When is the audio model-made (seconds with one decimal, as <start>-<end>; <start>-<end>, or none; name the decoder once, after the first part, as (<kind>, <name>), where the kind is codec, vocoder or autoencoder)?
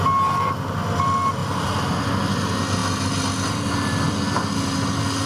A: none